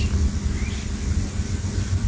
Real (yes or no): yes